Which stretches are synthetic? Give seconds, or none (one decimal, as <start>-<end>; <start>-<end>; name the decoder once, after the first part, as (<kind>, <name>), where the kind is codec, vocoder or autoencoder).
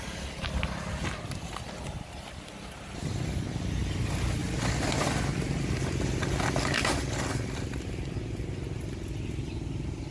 none